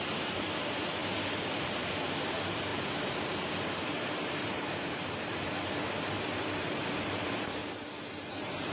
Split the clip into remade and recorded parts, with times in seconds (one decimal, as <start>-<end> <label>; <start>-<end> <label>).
0.0-7.6 remade; 7.6-8.1 recorded; 8.1-8.7 remade